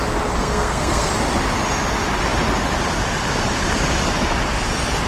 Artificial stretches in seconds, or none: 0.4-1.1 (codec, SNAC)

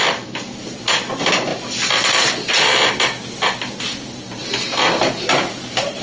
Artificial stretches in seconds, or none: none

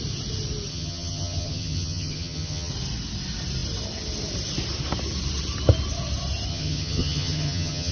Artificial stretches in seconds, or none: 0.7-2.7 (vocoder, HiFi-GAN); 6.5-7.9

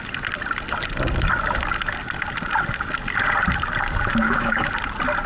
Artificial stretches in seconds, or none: 4.1-4.7 (autoencoder, DAC-VAE)